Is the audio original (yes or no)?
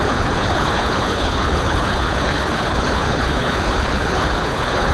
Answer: no